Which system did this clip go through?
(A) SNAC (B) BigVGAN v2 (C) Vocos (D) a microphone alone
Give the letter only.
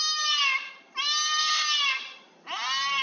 D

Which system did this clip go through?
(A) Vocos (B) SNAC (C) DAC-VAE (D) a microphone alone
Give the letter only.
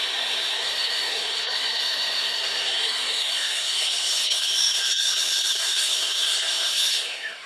B